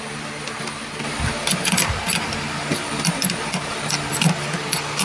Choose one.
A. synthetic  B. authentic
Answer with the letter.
B